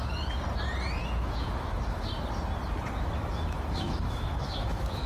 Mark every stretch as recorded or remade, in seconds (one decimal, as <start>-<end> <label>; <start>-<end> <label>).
0.0-1.0 recorded; 1.0-2.1 remade; 2.1-3.0 recorded; 3.0-5.1 remade